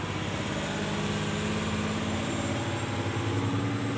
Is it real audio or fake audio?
real